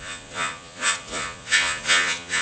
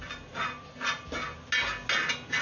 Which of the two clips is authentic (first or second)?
second